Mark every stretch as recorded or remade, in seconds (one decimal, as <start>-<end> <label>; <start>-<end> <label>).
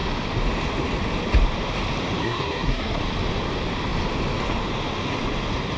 0.0-2.2 recorded; 2.2-3.0 remade; 3.0-5.8 recorded